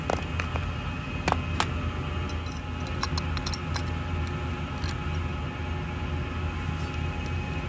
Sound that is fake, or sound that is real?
real